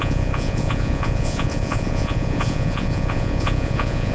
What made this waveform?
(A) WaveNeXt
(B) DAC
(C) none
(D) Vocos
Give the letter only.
D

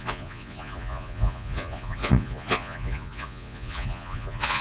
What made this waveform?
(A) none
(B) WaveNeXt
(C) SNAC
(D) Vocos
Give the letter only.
D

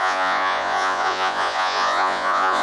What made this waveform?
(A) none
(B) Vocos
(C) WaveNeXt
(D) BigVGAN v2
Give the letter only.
B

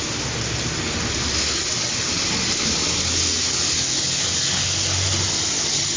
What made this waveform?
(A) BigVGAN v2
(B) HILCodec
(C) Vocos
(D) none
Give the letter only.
D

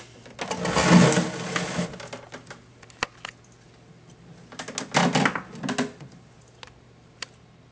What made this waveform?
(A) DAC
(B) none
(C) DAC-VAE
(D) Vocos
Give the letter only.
B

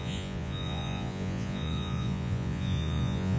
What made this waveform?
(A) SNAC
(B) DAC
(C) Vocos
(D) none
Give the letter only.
C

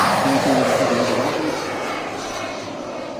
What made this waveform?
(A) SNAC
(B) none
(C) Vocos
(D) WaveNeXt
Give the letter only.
B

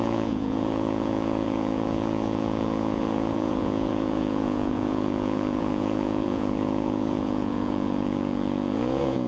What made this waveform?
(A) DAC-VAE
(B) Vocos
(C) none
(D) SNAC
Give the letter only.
B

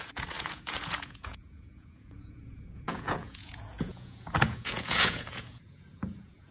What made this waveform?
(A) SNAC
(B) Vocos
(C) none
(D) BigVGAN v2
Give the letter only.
B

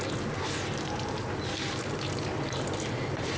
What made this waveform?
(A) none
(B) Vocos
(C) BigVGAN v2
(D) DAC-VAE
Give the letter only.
A